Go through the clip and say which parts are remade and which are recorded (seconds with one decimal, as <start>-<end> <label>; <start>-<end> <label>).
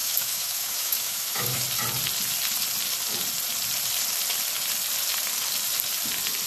0.0-1.6 remade; 1.6-6.5 recorded